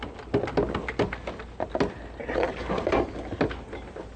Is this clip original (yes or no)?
yes